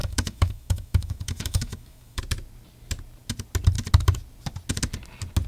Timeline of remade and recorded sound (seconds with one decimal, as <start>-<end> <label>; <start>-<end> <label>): 0.0-2.2 remade; 2.2-5.5 recorded